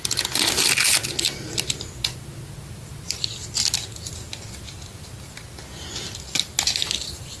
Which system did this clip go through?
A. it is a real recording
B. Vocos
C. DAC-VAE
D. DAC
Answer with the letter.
A